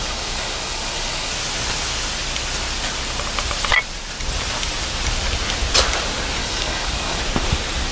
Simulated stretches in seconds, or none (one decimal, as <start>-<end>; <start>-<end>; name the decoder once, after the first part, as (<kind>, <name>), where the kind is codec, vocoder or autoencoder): 0.0-1.3 (codec, DAC); 6.4-7.2